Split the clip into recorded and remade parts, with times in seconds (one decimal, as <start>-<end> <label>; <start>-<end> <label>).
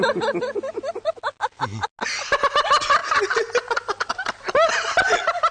0.0-5.5 recorded